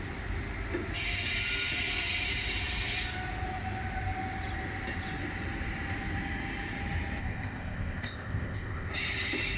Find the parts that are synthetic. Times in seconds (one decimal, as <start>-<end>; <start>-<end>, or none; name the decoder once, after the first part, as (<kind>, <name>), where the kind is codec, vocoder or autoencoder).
7.2-8.9 (codec, ZipCodec)